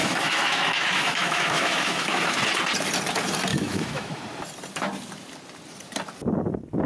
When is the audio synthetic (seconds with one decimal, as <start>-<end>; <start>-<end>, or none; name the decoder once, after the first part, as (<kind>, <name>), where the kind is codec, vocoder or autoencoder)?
0.0-2.4 (autoencoder, DAC-VAE); 3.5-4.2